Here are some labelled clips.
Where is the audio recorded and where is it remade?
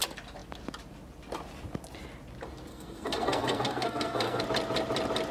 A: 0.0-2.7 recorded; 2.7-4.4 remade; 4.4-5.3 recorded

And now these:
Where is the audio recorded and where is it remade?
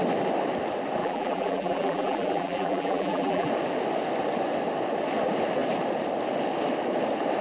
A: 0.0-1.0 recorded; 1.0-3.5 remade; 3.5-7.4 recorded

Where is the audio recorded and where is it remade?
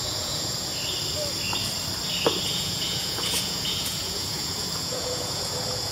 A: 0.0-0.7 remade; 0.7-2.6 recorded; 2.6-5.9 remade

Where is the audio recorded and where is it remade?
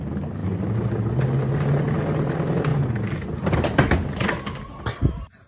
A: 0.0-5.5 recorded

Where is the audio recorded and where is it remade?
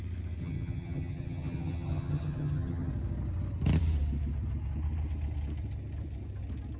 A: 0.0-0.4 recorded; 0.4-2.9 remade; 2.9-6.8 recorded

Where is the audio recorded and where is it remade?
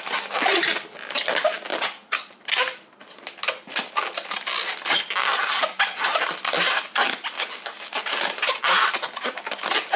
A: 0.0-10.0 recorded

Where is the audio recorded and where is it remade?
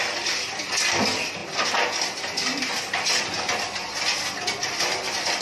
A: 0.0-5.4 recorded